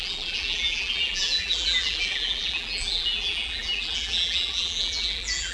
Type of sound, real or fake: fake